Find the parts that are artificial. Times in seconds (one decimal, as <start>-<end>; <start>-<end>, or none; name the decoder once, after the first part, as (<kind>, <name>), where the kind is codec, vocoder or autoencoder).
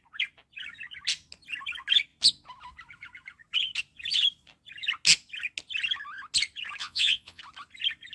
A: 6.8-7.4 (vocoder, Vocos)